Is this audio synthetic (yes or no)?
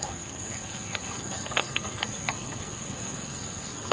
yes